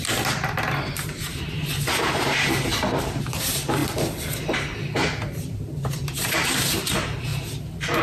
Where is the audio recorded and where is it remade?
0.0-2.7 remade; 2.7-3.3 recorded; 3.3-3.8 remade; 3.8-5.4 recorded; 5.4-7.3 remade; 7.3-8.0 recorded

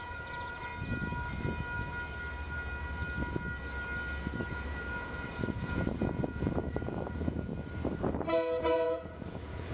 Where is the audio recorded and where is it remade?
0.0-0.7 remade; 0.7-4.5 recorded; 4.5-7.5 remade; 7.5-8.6 recorded; 8.6-9.7 remade